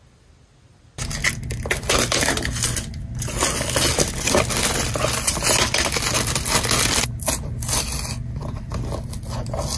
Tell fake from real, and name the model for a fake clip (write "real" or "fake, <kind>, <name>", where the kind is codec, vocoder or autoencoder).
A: real